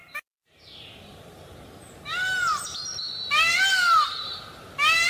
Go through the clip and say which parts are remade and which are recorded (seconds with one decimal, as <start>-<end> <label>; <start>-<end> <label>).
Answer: 0.0-5.1 recorded